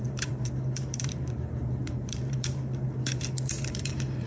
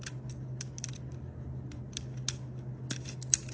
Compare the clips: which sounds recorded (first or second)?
second